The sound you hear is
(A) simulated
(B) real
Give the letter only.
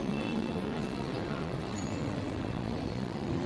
A